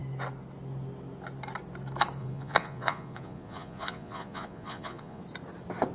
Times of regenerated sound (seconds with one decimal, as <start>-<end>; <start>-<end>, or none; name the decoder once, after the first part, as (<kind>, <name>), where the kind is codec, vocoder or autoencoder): 2.2-5.2 (vocoder, Vocos)